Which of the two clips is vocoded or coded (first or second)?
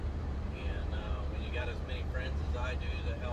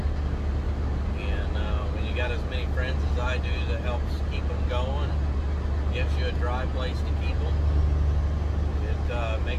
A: first